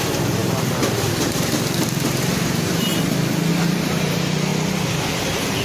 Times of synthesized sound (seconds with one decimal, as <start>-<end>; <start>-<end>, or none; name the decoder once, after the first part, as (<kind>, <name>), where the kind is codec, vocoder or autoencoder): 0.0-2.9 (vocoder, BigVGAN v2); 3.5-4.5; 5.1-5.6